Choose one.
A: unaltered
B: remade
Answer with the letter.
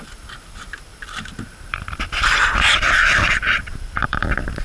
B